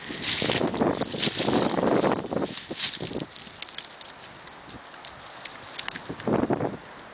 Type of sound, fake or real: real